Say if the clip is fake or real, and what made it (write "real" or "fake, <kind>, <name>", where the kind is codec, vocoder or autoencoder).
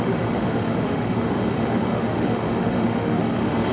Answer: fake, autoencoder, DAC-VAE